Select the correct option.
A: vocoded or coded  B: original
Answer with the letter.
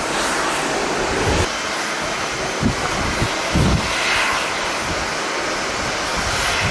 B